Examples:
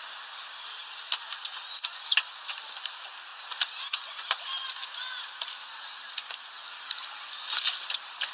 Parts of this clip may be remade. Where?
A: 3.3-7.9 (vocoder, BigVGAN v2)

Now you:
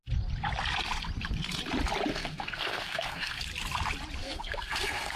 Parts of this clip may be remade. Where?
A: 2.1-3.4 (codec, SNAC); 4.2-5.2

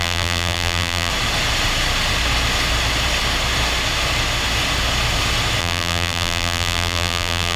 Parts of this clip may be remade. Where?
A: 0.0-1.1 (vocoder, BigVGAN v2); 5.6-7.6

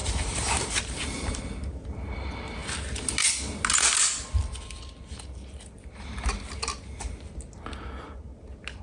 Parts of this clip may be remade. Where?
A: 0.0-1.4 (vocoder, BigVGAN v2)

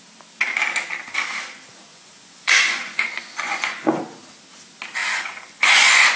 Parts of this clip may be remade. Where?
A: 1.9-4.0 (vocoder, Vocos); 5.0-6.2

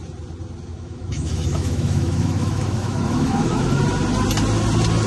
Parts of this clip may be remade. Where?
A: 0.7-3.8 (autoencoder, DAC-VAE)

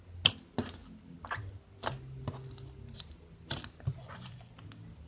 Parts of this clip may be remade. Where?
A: 4.0-4.5 (vocoder, Vocos)